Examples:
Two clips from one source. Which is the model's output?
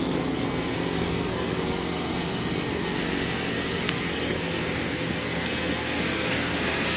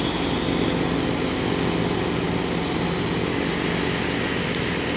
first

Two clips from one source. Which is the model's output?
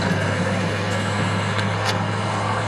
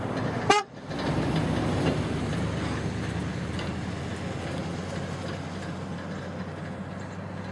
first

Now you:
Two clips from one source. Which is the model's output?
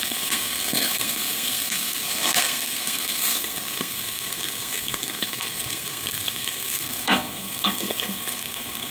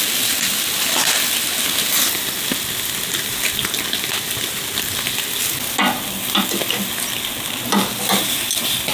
first